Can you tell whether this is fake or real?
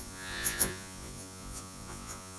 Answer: fake